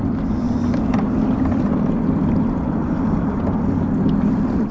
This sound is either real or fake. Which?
fake